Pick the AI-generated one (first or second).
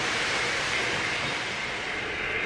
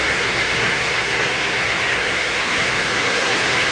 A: second